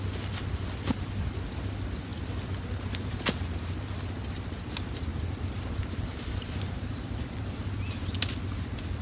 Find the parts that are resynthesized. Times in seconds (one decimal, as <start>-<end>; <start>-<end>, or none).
5.1-7.7